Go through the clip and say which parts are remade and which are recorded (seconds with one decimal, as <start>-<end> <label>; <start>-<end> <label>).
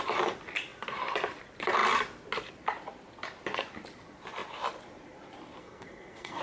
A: 0.0-5.6 recorded; 5.6-6.4 remade